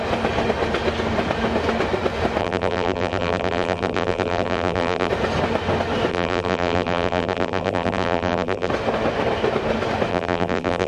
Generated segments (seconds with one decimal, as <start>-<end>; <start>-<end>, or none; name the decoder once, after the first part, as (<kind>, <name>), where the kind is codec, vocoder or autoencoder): 2.4-5.1 (vocoder, BigVGAN v2); 6.1-8.7; 10.1-10.9